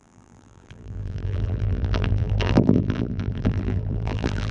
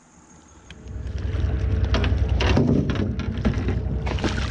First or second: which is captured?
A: second